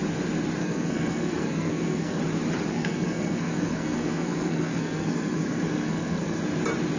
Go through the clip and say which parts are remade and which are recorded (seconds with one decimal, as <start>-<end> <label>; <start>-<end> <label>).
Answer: 0.0-0.6 recorded; 0.6-2.2 remade; 2.2-2.7 recorded; 2.7-6.4 remade; 6.4-7.0 recorded